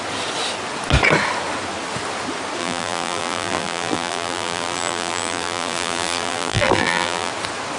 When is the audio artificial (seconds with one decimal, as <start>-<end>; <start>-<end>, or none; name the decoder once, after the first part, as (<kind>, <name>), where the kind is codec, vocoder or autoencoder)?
2.6-7.3 (vocoder, BigVGAN v2)